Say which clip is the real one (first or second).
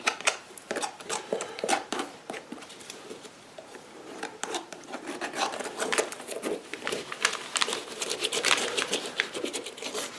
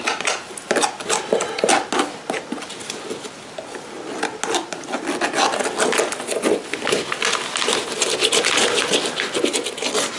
second